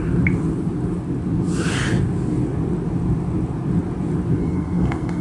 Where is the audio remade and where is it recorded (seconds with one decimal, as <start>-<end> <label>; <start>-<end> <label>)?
0.0-4.4 recorded; 4.4-5.2 remade